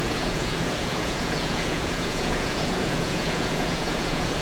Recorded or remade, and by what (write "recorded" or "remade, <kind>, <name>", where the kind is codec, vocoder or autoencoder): remade, vocoder, Vocos